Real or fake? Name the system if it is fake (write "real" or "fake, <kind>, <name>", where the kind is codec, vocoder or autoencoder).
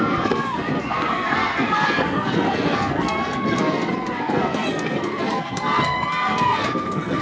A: fake, codec, SNAC